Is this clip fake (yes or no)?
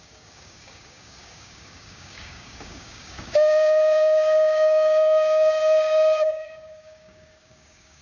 yes